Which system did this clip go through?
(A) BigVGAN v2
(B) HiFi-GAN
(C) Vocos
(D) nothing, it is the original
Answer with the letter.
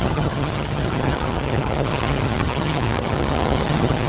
B